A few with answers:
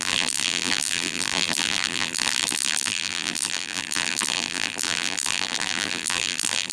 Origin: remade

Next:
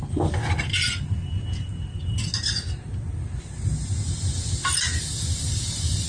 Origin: recorded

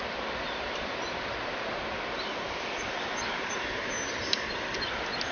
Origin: recorded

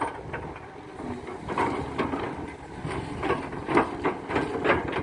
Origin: recorded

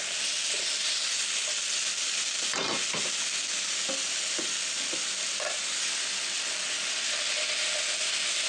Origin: recorded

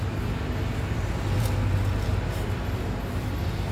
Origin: recorded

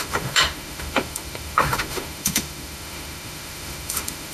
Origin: remade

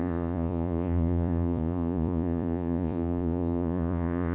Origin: remade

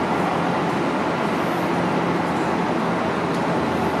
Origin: recorded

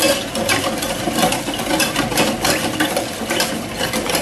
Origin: recorded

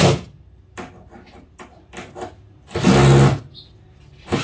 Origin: recorded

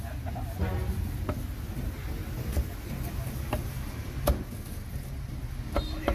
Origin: recorded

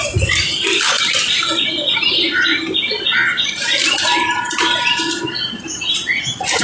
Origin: recorded